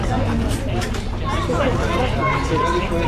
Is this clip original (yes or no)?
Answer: yes